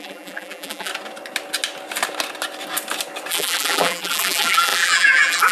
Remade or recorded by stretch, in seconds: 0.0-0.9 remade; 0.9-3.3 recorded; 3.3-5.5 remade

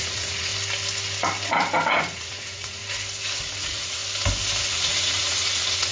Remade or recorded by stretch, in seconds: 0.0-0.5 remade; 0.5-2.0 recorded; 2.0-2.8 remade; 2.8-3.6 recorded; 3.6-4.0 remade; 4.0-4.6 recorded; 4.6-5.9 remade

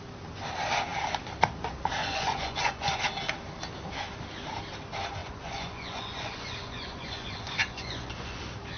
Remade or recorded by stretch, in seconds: 0.0-2.0 recorded; 2.0-3.0 remade; 3.0-5.2 recorded; 5.2-8.4 remade; 8.4-8.8 recorded

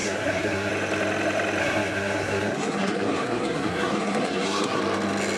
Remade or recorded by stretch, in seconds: 0.0-0.7 remade; 0.7-1.6 recorded; 1.6-4.8 remade; 4.8-5.4 recorded

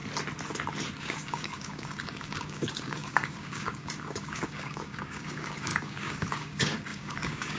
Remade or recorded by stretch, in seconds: 0.0-1.0 recorded; 1.0-7.6 remade

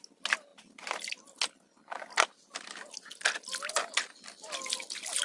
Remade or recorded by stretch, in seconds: 0.0-5.2 recorded

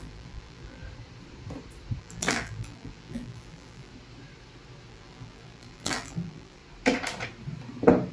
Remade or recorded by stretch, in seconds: 0.0-0.8 remade; 0.8-2.0 recorded; 2.0-3.9 remade; 3.9-4.9 recorded; 4.9-6.6 remade; 6.6-8.1 recorded